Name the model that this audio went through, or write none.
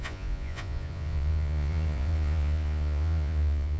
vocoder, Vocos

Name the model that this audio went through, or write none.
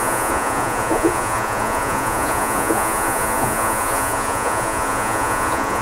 vocoder, Vocos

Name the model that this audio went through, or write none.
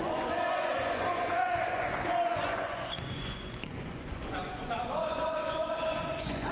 vocoder, Vocos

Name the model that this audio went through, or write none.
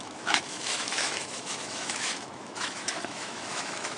autoencoder, DAC-VAE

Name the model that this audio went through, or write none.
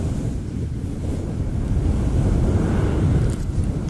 none